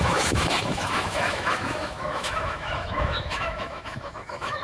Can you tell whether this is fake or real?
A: fake